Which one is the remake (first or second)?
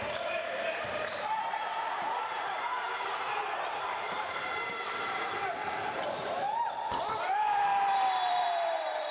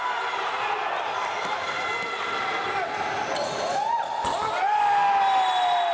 first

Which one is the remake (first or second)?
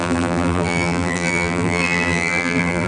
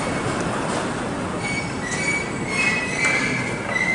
first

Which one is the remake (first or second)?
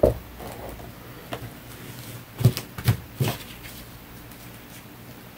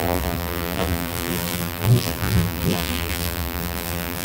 second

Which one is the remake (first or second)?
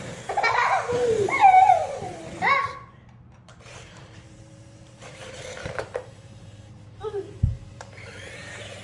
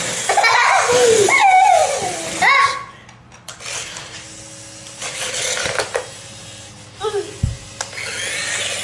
first